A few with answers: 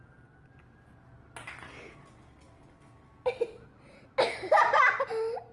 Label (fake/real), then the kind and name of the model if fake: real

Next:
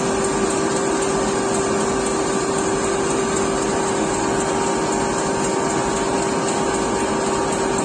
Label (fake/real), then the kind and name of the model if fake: real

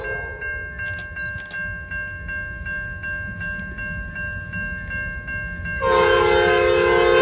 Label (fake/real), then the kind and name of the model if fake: real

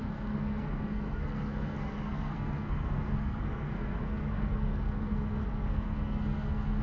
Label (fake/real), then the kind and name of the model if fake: fake, codec, SNAC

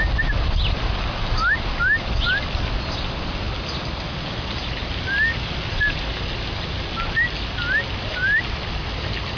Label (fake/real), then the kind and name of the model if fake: real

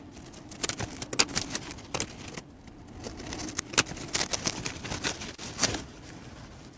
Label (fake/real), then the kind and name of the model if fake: real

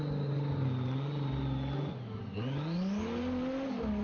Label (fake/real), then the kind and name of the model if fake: real